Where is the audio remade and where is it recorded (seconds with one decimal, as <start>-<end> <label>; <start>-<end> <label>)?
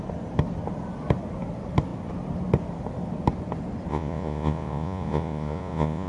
0.0-3.9 recorded; 3.9-6.1 remade